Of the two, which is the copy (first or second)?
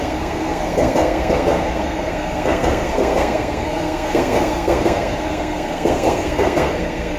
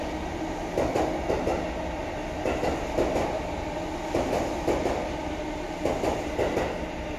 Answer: first